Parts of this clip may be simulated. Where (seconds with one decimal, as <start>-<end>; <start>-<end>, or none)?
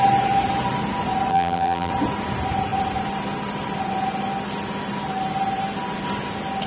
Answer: 1.3-1.9